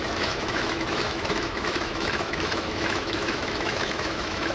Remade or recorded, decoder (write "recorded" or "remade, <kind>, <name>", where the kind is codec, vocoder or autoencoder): remade, autoencoder, DAC-VAE